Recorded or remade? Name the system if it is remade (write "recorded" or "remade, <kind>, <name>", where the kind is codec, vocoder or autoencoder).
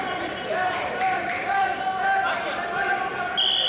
remade, vocoder, BigVGAN v2